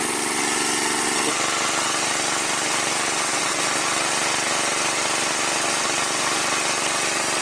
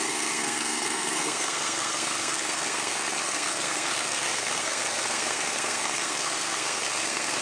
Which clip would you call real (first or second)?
first